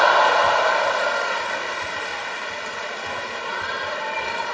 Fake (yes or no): no